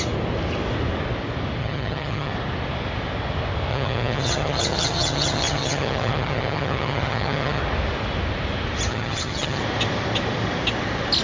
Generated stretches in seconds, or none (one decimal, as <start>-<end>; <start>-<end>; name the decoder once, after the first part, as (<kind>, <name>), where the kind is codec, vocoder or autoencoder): 1.6-2.3 (vocoder, HiFi-GAN); 3.7-7.6; 8.9-9.6

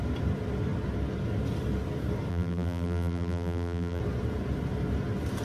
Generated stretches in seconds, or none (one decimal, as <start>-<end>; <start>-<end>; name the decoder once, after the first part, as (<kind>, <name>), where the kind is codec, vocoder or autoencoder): 2.3-4.0 (vocoder, BigVGAN v2)

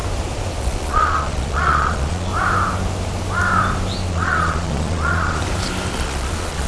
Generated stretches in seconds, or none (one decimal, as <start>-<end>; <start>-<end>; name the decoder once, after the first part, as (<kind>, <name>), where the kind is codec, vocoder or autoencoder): 0.6-2.3 (vocoder, Vocos); 4.1-5.4; 5.9-6.7

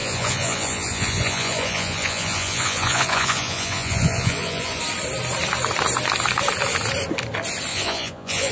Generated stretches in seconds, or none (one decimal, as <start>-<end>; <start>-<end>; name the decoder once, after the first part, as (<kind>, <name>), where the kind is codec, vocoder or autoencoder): 0.0-4.8 (vocoder, Vocos); 7.7-8.5

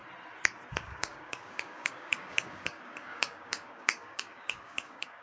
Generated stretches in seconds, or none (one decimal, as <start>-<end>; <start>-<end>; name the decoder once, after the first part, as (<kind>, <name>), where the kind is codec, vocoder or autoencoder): 0.7-5.2 (codec, DAC)